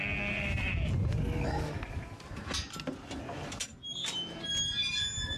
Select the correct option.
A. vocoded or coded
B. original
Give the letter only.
B